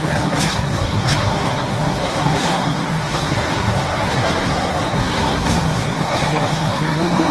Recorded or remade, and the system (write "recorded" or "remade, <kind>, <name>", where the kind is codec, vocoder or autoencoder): remade, codec, SNAC